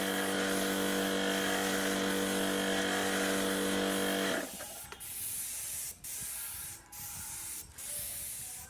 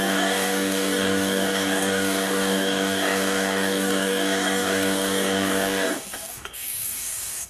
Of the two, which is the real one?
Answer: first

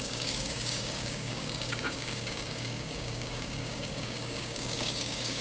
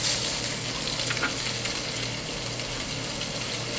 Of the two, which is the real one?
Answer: second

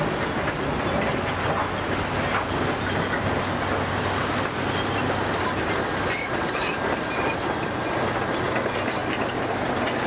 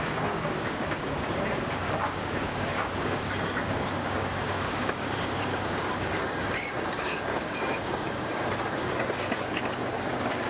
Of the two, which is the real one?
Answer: first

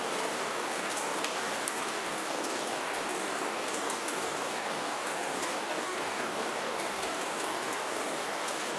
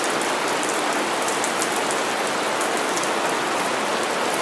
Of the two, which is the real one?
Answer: second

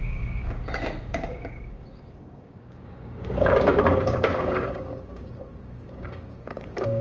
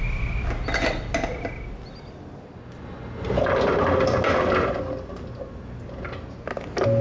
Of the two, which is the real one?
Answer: second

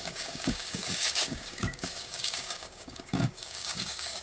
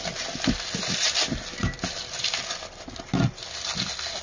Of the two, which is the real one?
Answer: second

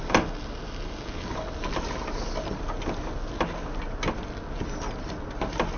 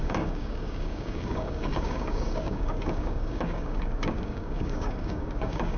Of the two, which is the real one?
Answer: first